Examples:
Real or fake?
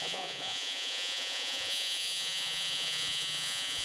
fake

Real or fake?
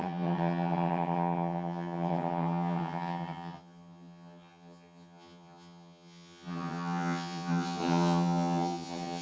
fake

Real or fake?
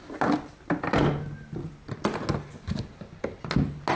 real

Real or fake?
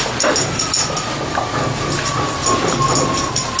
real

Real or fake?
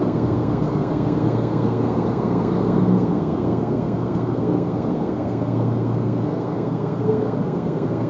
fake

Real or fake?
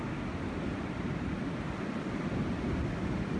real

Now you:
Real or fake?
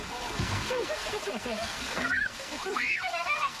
fake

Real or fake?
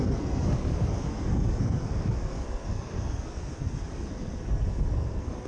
fake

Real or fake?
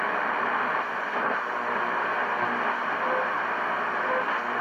real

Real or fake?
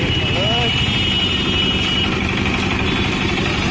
real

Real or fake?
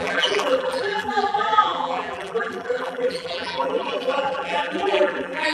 fake